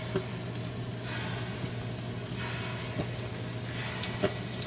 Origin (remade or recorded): recorded